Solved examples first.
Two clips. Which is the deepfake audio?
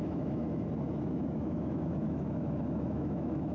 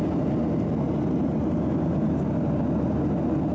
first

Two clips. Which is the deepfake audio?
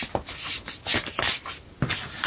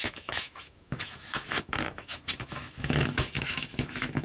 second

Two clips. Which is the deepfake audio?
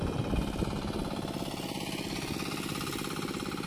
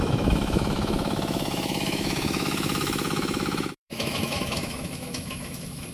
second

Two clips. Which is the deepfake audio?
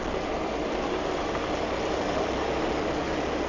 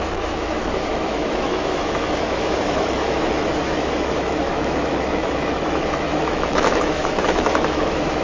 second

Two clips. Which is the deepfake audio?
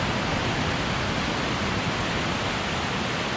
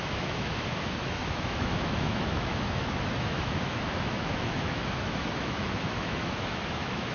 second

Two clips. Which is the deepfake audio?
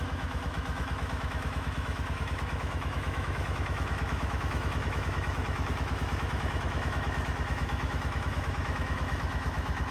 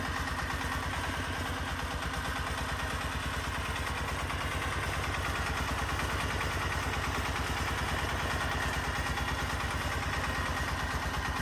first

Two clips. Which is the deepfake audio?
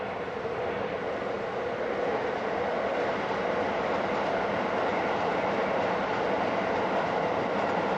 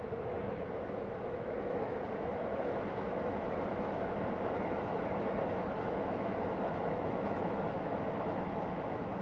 second